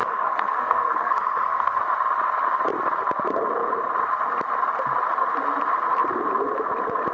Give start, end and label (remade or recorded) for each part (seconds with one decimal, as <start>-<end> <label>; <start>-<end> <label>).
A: 0.0-1.8 remade; 1.8-7.1 recorded

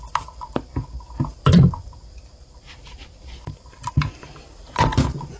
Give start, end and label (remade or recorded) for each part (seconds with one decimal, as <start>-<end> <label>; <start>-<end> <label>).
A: 0.0-5.4 recorded

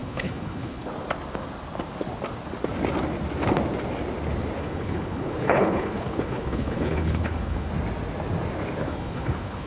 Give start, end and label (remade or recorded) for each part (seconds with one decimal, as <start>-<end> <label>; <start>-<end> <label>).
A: 0.0-0.8 remade; 0.8-4.6 recorded; 4.6-7.7 remade; 7.7-8.8 recorded; 8.8-9.7 remade

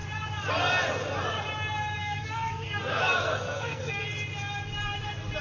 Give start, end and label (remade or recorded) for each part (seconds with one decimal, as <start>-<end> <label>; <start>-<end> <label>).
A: 0.0-2.0 recorded; 2.0-4.0 remade; 4.0-5.4 recorded

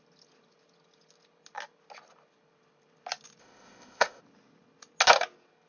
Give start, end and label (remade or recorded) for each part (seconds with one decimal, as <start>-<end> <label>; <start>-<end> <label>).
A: 0.0-3.4 recorded; 3.4-4.2 remade; 4.2-5.7 recorded